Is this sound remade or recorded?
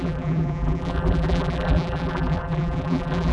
remade